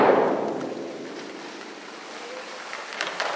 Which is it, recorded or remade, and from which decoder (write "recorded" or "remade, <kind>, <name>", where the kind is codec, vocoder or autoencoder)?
recorded